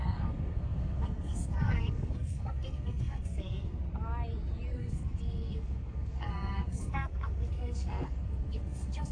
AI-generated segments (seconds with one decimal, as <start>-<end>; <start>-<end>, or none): 0.0-3.8; 4.7-9.1